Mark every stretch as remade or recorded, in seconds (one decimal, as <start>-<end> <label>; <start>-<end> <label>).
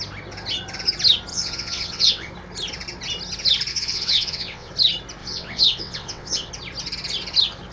0.0-1.3 recorded; 1.3-2.3 remade; 2.3-3.7 recorded; 3.7-4.7 remade; 4.7-5.2 recorded; 5.2-6.5 remade; 6.5-7.7 recorded